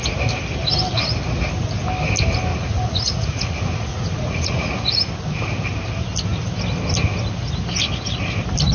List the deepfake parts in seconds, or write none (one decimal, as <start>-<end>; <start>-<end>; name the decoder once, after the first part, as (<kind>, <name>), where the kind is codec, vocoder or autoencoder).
2.5-4.7 (vocoder, Vocos)